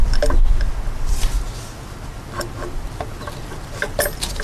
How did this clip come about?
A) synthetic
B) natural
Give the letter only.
B